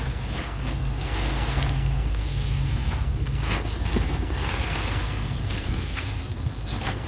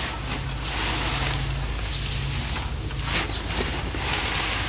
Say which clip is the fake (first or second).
first